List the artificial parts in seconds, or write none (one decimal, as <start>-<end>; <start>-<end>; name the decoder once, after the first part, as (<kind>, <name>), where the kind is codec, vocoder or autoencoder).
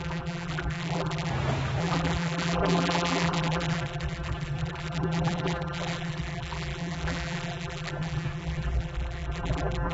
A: 0.0-1.3 (vocoder, BigVGAN v2); 1.8-9.9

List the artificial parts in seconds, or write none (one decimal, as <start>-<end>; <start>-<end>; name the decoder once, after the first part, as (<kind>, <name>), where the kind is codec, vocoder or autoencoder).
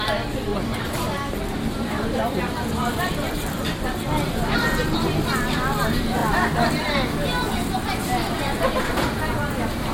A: 0.5-5.4 (vocoder, BigVGAN v2)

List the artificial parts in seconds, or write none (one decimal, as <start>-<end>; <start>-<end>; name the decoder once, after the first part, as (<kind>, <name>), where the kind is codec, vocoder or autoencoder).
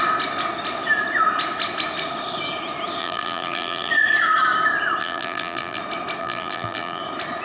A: 3.0-3.9 (vocoder, BigVGAN v2); 5.0-5.8; 6.2-7.0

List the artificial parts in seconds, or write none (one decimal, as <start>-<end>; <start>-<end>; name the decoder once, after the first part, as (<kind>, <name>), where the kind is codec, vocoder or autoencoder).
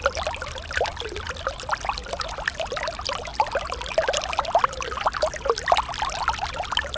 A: none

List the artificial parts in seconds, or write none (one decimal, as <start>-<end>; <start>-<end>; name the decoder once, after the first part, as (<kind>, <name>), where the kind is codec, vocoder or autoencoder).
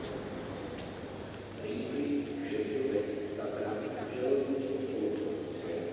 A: none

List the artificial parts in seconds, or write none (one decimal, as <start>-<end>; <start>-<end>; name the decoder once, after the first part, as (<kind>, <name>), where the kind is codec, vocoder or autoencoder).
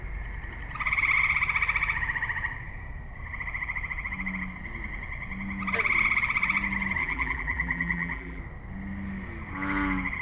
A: 7.0-8.4 (vocoder, BigVGAN v2)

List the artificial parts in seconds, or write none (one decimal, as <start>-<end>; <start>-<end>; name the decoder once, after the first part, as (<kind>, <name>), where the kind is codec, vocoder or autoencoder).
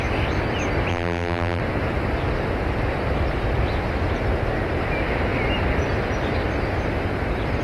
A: 0.9-1.6 (vocoder, BigVGAN v2)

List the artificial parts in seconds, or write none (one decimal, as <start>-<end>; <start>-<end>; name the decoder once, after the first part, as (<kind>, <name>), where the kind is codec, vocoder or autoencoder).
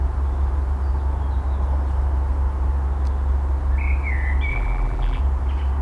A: 4.5-5.2 (vocoder, BigVGAN v2)